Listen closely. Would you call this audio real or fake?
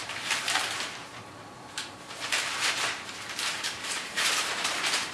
fake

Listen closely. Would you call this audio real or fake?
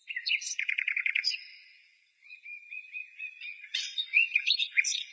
fake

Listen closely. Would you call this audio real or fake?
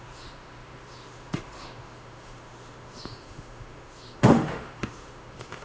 fake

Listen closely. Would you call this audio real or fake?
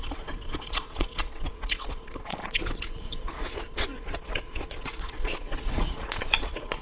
fake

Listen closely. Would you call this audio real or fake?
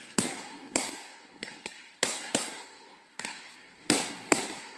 fake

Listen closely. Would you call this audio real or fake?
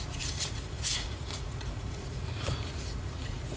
fake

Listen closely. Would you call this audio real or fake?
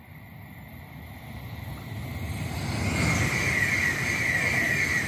real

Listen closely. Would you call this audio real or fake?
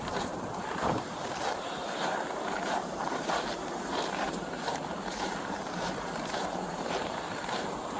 fake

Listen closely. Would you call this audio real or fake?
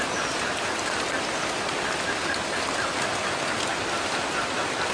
real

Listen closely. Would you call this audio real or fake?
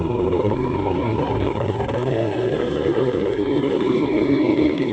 fake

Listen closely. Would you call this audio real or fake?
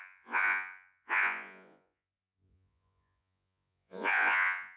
fake